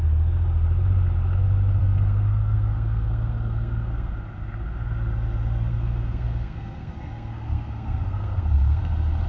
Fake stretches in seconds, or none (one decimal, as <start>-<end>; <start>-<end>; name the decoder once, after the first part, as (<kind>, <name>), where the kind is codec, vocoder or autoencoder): 1.8-4.1 (codec, SNAC); 5.7-8.8

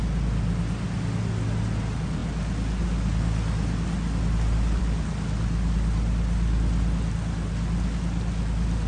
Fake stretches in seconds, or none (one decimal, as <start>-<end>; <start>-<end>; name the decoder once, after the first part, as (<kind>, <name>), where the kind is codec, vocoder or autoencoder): none